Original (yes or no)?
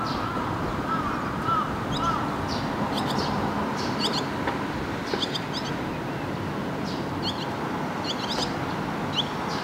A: yes